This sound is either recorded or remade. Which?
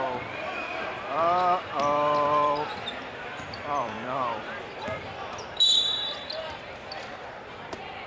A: remade